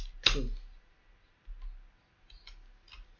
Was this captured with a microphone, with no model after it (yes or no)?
yes